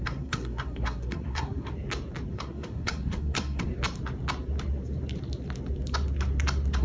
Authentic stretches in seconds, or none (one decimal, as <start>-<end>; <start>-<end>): 1.7-2.3; 3.7-6.8